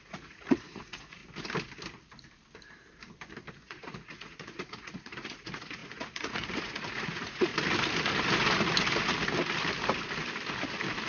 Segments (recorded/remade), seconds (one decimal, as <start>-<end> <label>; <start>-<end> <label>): 0.0-1.2 remade; 1.2-3.5 recorded; 3.5-7.5 remade; 7.5-11.1 recorded